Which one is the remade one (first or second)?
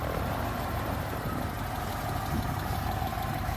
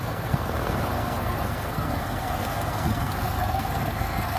second